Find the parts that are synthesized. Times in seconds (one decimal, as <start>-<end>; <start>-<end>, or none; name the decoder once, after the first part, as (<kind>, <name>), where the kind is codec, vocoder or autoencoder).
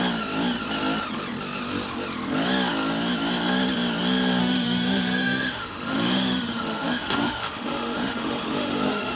4.4-9.2 (autoencoder, DAC-VAE)